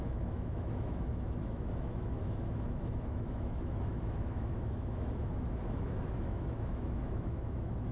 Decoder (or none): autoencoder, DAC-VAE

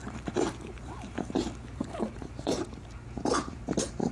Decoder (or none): vocoder, BigVGAN v2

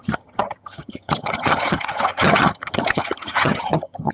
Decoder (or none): vocoder, HiFi-GAN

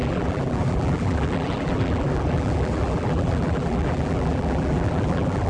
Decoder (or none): vocoder, BigVGAN v2